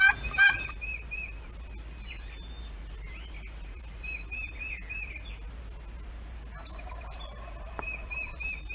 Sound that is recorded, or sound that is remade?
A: recorded